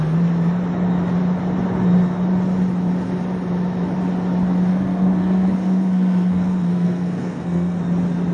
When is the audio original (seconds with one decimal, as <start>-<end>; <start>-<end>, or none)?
0.0-4.7; 7.8-8.3